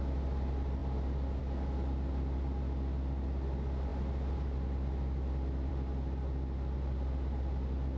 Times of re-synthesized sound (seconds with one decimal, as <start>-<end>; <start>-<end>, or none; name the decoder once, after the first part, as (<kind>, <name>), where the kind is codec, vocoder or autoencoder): none